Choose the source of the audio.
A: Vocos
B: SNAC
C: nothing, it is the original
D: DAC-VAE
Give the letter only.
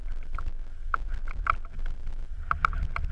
C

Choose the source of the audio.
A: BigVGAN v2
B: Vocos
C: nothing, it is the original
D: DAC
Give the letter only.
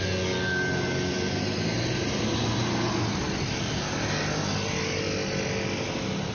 C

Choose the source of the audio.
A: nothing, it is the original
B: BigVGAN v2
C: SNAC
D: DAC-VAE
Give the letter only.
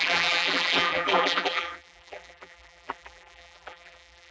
B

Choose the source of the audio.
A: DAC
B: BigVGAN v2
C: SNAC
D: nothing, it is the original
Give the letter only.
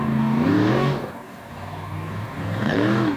A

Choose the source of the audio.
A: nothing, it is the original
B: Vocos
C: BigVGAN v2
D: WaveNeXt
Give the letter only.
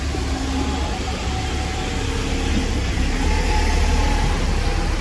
A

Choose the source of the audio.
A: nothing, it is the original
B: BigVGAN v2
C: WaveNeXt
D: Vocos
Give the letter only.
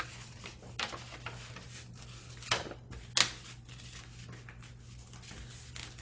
A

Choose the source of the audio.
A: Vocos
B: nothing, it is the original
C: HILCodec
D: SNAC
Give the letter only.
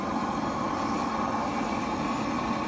B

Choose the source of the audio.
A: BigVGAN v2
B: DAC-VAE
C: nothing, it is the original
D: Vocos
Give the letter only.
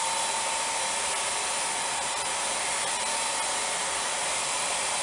C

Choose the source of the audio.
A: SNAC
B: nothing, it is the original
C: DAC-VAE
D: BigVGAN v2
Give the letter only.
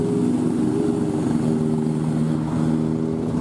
B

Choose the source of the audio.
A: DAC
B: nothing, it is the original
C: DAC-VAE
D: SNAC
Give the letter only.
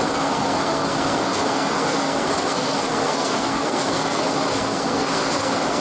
D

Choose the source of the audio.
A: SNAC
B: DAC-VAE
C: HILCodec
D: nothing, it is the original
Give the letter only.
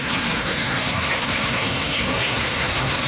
A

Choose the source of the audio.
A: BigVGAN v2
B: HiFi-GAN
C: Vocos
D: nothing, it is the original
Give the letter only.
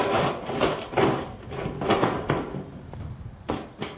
D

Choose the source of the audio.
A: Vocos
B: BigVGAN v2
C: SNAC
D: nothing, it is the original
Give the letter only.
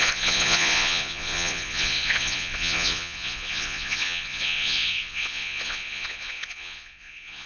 A